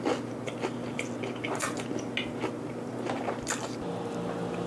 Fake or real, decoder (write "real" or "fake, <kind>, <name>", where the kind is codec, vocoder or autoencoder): real